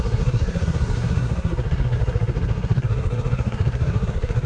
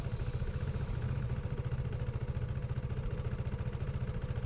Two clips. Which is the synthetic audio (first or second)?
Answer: first